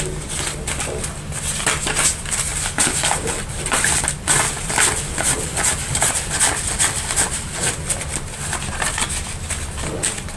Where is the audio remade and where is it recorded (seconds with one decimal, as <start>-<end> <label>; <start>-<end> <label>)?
0.0-2.5 recorded; 2.5-7.5 remade; 7.5-10.4 recorded